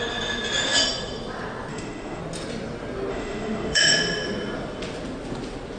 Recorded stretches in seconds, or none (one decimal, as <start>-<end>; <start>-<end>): 0.0-1.7; 2.2-3.1; 3.8-5.8